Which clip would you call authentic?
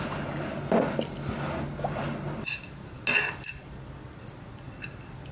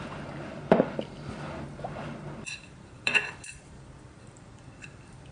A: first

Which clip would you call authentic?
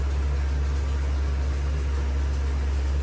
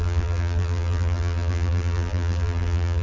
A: first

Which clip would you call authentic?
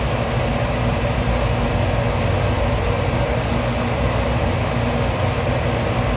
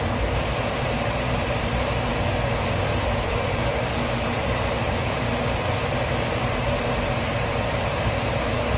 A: first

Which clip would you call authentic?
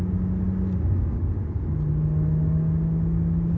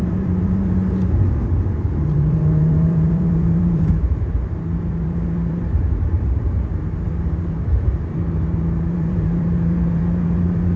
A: first